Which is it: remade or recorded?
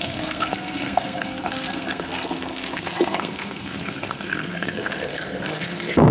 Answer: remade